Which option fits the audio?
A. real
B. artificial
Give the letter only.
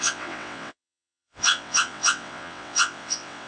B